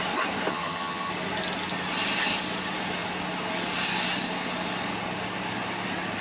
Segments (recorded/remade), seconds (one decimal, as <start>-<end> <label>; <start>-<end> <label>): 0.0-0.5 recorded; 0.5-1.1 remade; 1.1-6.2 recorded